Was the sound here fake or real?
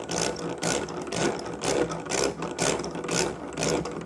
real